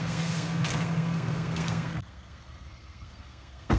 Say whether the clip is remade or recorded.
remade